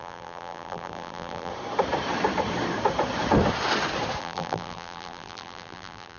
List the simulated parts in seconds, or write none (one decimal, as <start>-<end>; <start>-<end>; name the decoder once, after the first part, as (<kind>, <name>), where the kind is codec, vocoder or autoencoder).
0.0-1.5 (vocoder, BigVGAN v2); 4.2-6.2